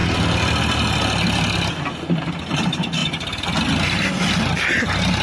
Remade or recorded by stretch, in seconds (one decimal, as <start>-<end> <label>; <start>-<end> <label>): 0.0-5.2 recorded